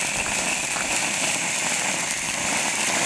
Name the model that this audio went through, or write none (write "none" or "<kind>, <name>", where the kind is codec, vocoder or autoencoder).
none